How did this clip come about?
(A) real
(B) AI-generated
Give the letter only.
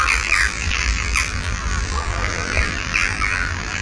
B